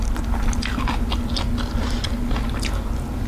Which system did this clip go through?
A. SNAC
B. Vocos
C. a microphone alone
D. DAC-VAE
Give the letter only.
C